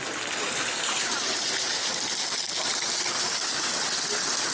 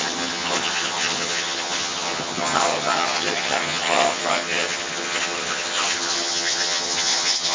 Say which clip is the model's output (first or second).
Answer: second